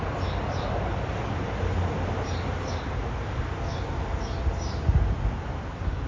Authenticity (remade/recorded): recorded